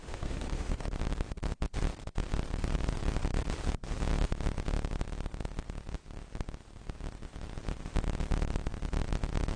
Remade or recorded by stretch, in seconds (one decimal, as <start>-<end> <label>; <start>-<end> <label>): 0.0-0.9 remade; 0.9-9.6 recorded